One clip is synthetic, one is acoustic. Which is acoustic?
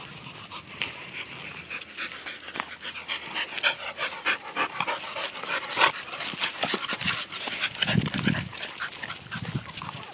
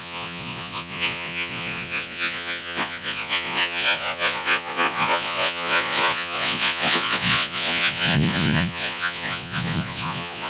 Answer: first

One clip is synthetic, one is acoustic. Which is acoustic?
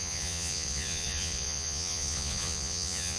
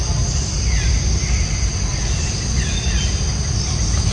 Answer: second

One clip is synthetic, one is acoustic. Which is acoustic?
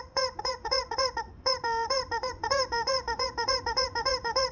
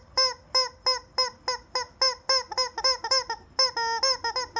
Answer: second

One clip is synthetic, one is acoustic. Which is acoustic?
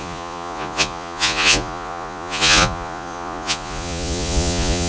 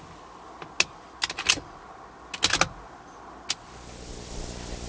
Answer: second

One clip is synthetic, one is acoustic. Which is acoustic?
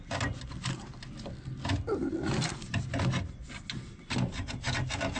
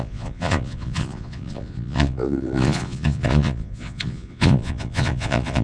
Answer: first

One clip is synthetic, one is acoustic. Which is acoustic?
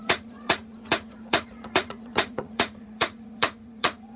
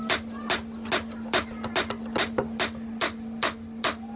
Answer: second